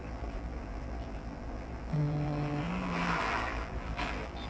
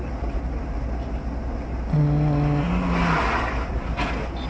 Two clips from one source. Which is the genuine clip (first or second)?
second